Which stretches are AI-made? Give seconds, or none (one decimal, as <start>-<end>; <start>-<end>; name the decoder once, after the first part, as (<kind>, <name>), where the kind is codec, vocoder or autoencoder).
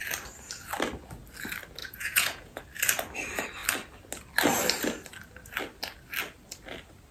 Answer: 1.8-2.6 (vocoder, Vocos)